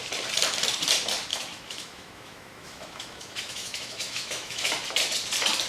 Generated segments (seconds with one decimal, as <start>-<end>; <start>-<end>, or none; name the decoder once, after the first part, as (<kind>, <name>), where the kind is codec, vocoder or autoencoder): 1.3-4.7 (autoencoder, DAC-VAE)